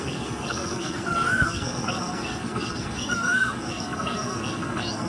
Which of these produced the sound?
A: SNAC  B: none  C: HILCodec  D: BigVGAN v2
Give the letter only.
A